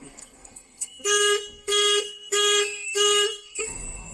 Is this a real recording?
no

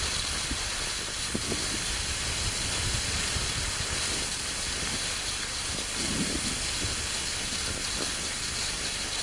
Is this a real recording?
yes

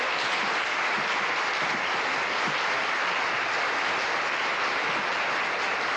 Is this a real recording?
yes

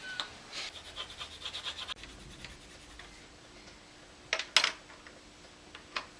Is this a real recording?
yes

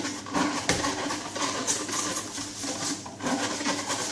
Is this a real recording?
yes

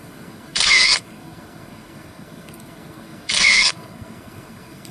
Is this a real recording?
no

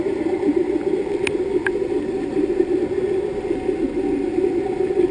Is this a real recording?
yes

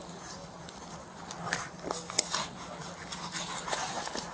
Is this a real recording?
yes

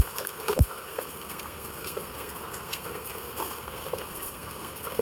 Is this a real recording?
no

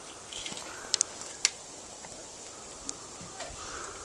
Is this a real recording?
yes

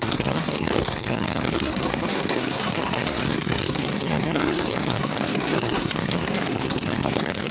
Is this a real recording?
no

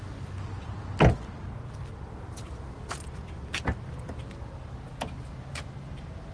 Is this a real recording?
yes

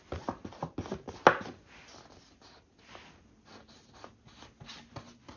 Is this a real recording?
yes